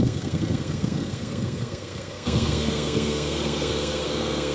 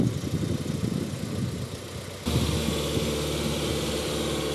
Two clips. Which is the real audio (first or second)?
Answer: second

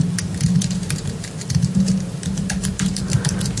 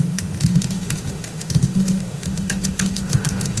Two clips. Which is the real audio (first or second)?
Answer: first